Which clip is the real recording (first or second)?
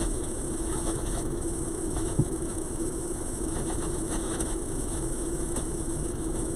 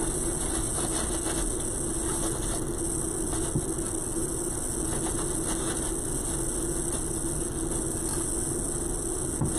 second